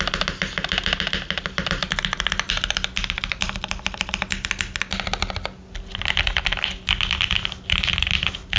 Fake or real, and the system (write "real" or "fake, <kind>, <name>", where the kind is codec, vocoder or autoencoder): real